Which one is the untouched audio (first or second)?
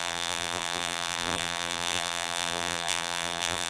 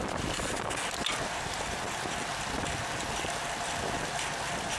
second